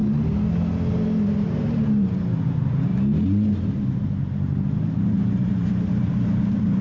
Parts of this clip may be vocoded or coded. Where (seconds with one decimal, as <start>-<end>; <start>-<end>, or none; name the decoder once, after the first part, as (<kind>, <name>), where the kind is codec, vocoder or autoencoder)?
0.9-2.9 (vocoder, BigVGAN v2); 5.0-6.8

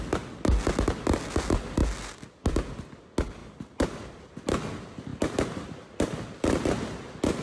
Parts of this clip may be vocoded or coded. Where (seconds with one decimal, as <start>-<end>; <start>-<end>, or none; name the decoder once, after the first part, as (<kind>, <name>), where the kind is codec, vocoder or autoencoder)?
3.4-4.5 (vocoder, BigVGAN v2); 5.1-6.2

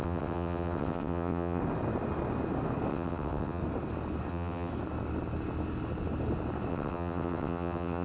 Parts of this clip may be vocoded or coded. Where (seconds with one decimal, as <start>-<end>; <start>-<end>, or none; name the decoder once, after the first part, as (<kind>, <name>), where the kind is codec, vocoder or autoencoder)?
0.0-1.6 (vocoder, WaveNeXt); 2.9-3.6; 4.3-4.7; 6.7-8.0

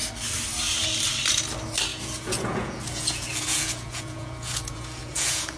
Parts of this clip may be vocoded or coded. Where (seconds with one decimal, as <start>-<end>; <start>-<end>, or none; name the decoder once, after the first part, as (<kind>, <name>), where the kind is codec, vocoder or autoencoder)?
1.9-5.6 (vocoder, Vocos)

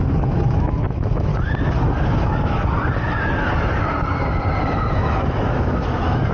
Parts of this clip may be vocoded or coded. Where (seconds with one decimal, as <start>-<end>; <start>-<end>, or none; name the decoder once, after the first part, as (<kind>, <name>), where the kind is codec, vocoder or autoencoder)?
0.0-1.3 (autoencoder, DAC-VAE); 4.9-6.3

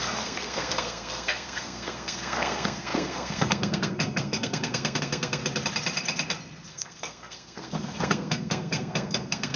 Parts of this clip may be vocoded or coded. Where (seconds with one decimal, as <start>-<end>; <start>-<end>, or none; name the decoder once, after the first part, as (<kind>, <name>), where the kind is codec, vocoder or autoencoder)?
0.0-5.4 (codec, SNAC); 6.7-9.6

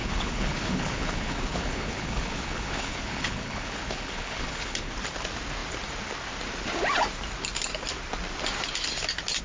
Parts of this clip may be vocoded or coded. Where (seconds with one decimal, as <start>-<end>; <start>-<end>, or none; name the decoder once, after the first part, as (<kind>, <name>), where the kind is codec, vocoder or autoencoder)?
0.0-4.9 (codec, HILCodec)

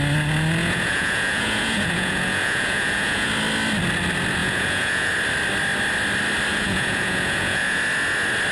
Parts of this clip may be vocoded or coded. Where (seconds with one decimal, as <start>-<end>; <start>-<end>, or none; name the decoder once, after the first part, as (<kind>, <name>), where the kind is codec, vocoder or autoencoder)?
0.6-3.3 (vocoder, Vocos); 4.4-5.1; 6.5-7.8